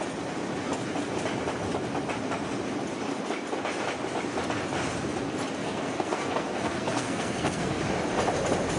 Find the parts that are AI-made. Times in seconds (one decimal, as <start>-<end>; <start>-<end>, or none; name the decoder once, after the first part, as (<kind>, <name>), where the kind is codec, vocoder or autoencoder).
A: 5.6-7.8 (codec, SNAC)

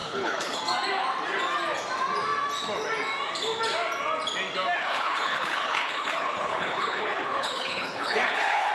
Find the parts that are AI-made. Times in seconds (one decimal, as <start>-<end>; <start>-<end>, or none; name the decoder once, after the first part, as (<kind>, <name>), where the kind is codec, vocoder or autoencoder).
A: 0.0-0.6 (codec, HILCodec); 4.8-8.7

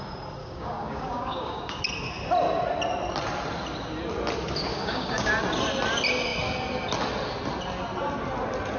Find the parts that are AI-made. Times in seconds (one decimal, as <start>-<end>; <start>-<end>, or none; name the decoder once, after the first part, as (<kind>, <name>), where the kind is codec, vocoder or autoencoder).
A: 0.4-1.8 (codec, DAC); 4.7-5.3